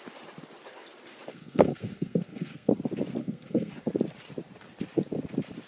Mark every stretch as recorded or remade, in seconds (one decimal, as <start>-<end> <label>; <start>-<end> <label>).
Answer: 0.0-1.3 recorded; 1.3-2.7 remade; 2.7-3.2 recorded; 3.2-3.7 remade; 3.7-5.7 recorded